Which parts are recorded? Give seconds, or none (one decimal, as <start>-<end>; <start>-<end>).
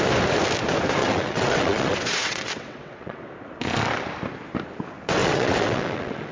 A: 0.0-1.0; 3.3-5.2